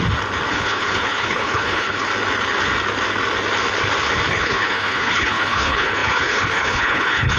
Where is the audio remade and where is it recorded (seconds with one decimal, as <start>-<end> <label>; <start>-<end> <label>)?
0.0-0.5 recorded; 0.5-2.1 remade; 2.1-4.3 recorded; 4.3-7.4 remade